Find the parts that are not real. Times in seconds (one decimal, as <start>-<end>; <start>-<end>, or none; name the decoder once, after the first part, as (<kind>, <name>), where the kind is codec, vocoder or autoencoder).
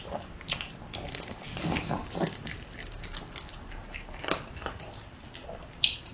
none